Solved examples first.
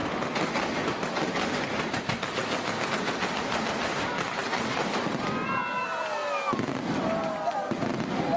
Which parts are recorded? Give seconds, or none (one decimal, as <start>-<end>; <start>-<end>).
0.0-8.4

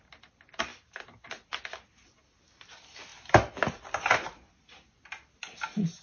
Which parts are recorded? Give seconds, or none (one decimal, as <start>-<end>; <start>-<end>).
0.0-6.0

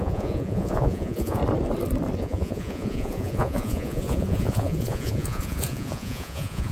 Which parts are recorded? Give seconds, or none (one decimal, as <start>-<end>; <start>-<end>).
1.4-2.2